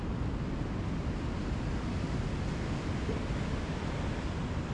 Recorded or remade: recorded